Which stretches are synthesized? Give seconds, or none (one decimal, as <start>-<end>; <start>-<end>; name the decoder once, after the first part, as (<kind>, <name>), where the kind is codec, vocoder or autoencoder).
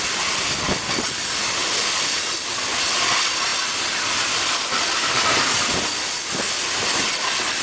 none